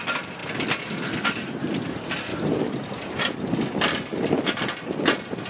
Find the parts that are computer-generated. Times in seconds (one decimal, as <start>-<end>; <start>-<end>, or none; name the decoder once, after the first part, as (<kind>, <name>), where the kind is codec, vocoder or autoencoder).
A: none